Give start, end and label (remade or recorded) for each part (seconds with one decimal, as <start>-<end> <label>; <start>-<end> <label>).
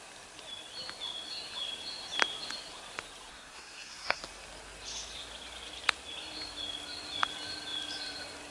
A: 0.0-3.3 recorded; 3.3-4.2 remade; 4.2-8.5 recorded